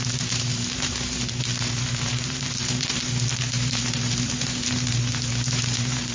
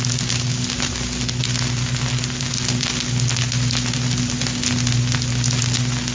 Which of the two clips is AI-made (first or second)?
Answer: first